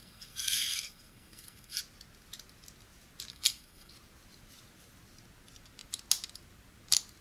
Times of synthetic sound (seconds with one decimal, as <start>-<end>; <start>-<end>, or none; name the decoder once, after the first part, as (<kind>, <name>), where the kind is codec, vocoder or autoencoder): 0.0-1.8 (codec, SNAC); 3.3-3.9

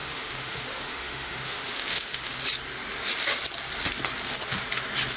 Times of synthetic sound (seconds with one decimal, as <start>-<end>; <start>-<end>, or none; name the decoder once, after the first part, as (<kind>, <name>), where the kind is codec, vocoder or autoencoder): 0.0-2.4 (autoencoder, DAC-VAE)

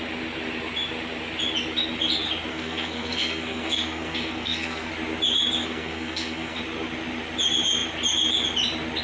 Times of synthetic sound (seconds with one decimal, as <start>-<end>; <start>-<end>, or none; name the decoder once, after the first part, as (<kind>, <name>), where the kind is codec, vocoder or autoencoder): 2.5-4.9 (codec, SNAC); 5.6-6.6

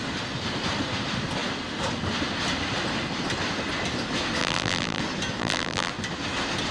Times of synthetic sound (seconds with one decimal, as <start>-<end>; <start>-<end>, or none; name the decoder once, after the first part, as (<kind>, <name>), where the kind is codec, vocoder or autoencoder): 4.4-5.0 (vocoder, BigVGAN v2); 5.4-5.9

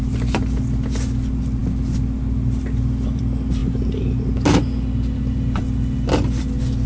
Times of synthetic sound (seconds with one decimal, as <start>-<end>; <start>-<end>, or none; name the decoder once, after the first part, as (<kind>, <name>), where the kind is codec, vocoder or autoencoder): none

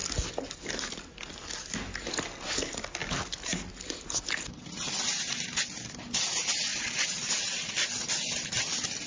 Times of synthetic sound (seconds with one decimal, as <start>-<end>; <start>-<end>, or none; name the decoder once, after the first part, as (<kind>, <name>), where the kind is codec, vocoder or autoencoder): none

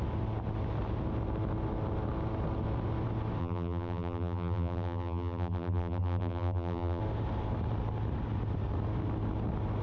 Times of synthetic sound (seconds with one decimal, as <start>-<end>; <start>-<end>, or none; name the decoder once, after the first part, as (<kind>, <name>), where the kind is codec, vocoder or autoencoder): 3.4-7.0 (vocoder, BigVGAN v2)

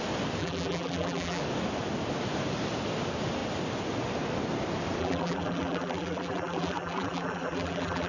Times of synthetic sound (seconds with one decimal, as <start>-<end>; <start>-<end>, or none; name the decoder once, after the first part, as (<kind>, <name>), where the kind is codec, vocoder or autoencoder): 0.4-1.4 (vocoder, BigVGAN v2); 5.0-8.1